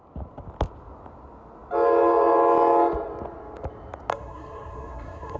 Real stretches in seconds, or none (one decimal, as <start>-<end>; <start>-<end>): 0.0-4.1